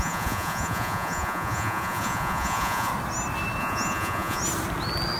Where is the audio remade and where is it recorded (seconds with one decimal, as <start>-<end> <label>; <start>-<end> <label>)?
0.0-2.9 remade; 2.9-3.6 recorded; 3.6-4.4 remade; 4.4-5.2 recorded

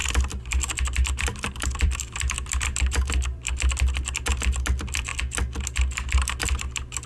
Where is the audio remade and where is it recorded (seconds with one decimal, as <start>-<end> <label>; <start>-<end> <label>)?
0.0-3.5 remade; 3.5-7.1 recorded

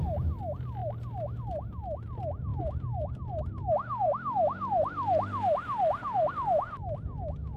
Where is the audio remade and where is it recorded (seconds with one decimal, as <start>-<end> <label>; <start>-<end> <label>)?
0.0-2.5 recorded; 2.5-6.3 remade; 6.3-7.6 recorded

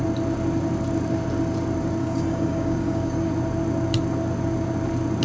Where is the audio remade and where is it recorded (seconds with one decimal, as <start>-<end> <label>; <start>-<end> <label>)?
0.0-2.0 recorded; 2.0-3.3 remade; 3.3-5.2 recorded